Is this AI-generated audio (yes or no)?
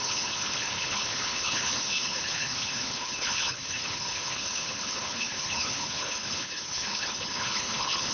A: yes